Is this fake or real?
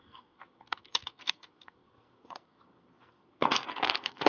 fake